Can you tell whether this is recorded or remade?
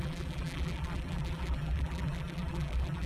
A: remade